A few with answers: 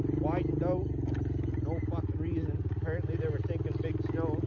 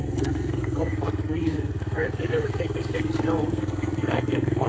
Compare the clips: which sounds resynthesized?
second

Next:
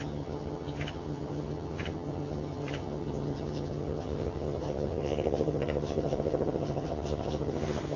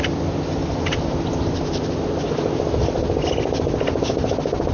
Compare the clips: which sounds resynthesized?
first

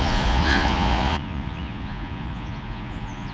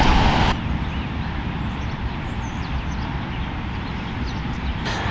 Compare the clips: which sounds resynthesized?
first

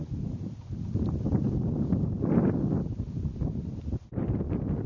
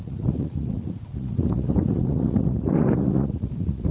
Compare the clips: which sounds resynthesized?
second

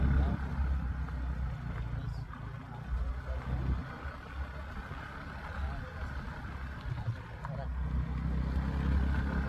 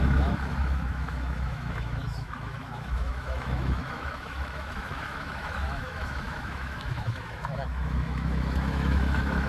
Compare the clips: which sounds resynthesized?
second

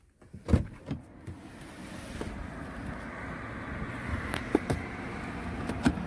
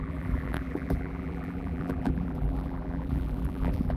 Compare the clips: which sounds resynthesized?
second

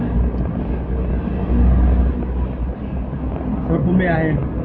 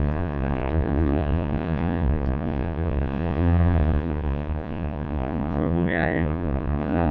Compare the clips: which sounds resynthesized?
second